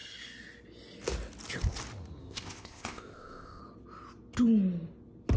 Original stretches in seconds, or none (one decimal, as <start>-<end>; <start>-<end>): 0.0-2.2; 3.6-5.4